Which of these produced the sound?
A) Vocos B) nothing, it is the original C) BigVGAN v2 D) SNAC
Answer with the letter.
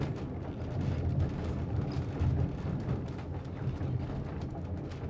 B